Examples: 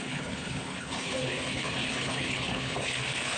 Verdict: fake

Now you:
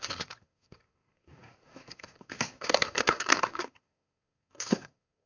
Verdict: fake